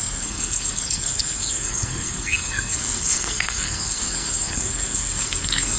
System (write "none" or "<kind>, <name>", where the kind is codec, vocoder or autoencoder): codec, SNAC